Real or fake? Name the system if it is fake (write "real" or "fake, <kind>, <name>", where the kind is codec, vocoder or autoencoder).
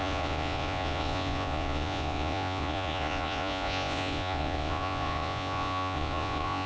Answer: fake, vocoder, Vocos